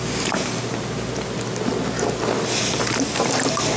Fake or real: real